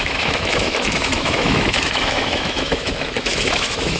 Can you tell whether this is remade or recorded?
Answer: remade